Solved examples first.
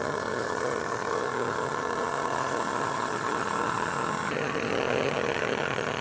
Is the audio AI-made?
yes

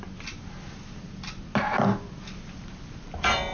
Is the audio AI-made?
no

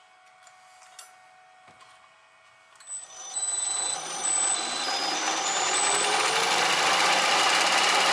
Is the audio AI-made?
no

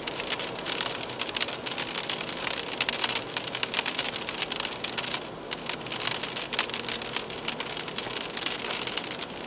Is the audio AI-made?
no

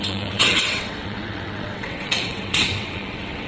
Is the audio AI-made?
yes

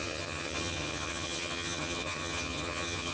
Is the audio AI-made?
yes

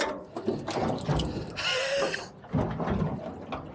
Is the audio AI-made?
no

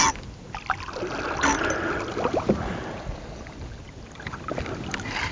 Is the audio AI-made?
no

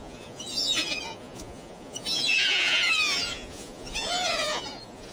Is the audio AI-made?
yes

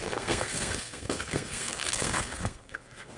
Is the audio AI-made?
yes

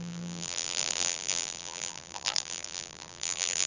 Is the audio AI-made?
yes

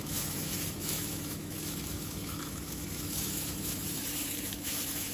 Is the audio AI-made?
yes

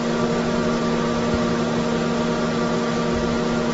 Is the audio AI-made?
no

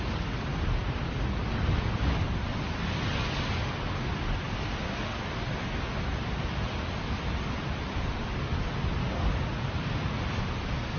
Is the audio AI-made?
no